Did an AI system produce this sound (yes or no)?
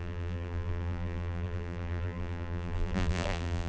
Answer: yes